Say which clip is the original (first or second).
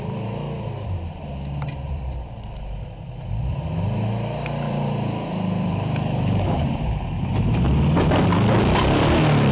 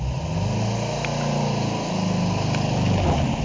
second